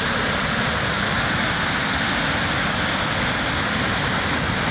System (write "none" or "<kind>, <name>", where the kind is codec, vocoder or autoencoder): none